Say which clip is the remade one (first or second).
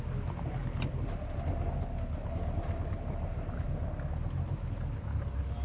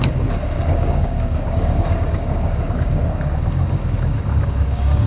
second